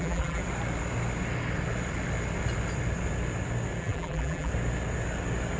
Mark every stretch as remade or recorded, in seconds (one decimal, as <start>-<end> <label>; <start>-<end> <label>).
0.0-0.4 remade; 0.4-3.8 recorded; 3.8-4.5 remade; 4.5-5.6 recorded